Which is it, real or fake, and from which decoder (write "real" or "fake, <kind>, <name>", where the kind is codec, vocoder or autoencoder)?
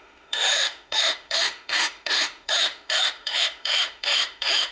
fake, autoencoder, DAC-VAE